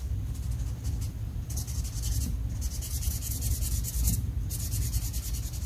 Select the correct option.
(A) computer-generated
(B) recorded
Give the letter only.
B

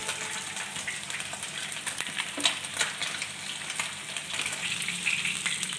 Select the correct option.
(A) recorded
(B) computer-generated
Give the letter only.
A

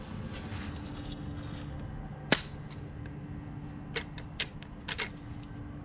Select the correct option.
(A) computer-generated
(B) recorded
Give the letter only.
B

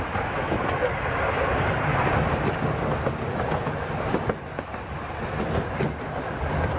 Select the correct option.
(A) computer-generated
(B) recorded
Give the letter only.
B